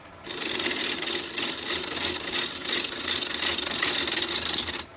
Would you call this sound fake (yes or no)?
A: no